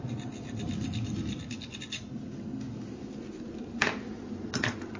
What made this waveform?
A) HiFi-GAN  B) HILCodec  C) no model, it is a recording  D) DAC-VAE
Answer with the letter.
C